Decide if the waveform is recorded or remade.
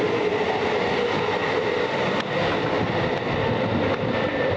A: recorded